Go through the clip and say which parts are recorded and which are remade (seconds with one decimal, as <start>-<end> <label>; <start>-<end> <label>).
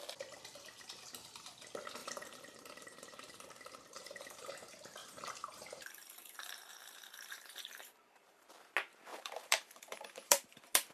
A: 0.0-2.0 recorded; 2.0-4.5 remade; 4.5-5.0 recorded; 5.0-8.6 remade; 8.6-9.1 recorded; 9.1-10.9 remade